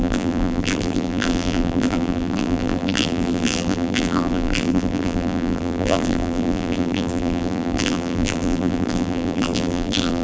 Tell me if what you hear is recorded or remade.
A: remade